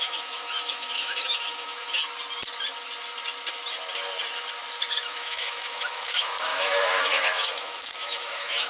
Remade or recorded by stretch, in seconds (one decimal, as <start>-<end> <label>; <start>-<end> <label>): 0.0-2.0 remade; 2.0-4.9 recorded; 4.9-8.7 remade